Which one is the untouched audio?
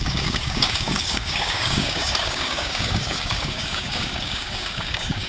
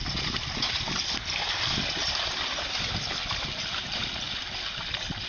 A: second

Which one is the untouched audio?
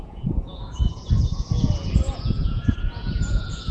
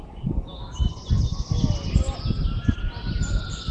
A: second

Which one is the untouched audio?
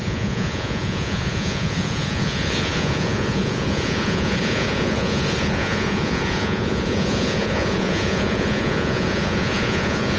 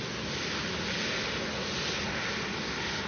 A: second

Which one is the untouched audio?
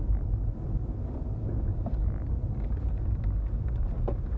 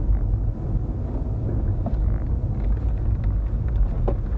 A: second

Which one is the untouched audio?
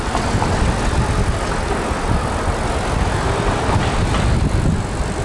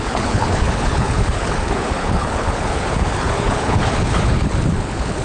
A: first